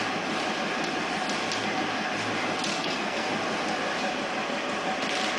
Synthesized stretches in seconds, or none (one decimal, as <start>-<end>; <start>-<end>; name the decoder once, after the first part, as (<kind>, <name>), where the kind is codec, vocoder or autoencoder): 2.7-3.3 (codec, SNAC)